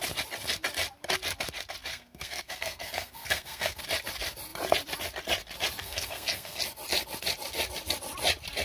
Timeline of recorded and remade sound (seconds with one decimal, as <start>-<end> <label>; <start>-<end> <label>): 0.0-1.9 recorded; 1.9-3.8 remade; 3.8-5.8 recorded; 5.8-6.6 remade; 6.6-8.6 recorded